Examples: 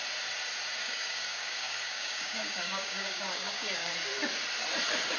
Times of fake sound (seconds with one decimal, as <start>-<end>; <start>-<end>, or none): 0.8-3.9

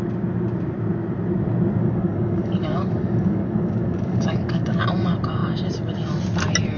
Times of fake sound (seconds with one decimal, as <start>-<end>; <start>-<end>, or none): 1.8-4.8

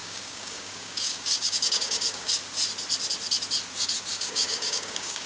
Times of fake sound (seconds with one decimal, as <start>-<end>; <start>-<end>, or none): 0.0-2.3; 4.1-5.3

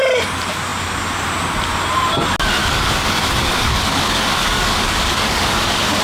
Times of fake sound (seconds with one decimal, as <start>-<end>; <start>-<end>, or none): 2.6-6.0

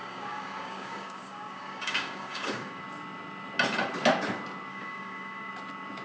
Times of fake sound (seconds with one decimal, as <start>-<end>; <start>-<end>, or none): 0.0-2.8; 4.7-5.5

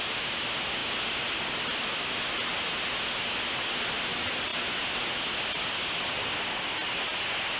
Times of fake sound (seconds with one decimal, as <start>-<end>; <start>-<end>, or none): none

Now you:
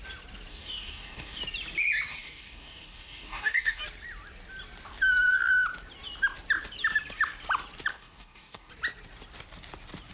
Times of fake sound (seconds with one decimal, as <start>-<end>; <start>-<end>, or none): 0.5-1.4; 2.1-3.8; 7.9-8.7

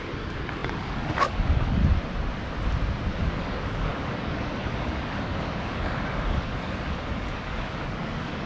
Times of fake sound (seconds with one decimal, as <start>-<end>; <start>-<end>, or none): 0.0-1.8; 3.1-8.5